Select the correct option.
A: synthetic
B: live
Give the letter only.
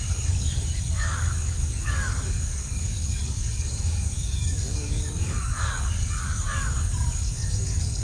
A